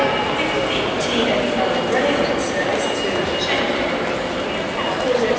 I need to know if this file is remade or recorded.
recorded